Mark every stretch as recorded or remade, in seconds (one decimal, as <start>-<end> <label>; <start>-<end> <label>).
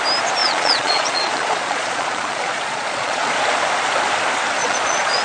0.0-0.4 recorded; 0.4-3.3 remade; 3.3-4.6 recorded; 4.6-5.2 remade